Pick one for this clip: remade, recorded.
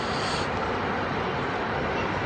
recorded